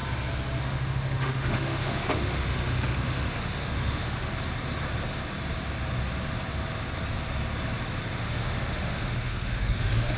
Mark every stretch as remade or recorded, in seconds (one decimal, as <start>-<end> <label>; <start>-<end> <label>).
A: 0.0-0.6 recorded; 0.6-4.3 remade; 4.3-8.2 recorded; 8.2-10.2 remade